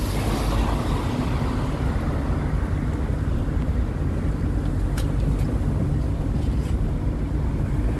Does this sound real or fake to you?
real